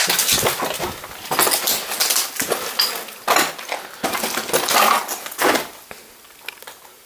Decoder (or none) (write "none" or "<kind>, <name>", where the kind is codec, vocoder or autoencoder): none